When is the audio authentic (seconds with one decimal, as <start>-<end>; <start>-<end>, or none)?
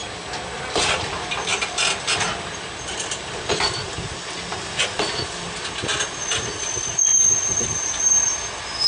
0.0-7.1; 7.9-8.9